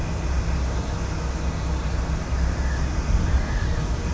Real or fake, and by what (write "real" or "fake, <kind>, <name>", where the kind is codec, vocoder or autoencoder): real